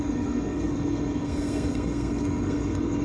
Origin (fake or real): fake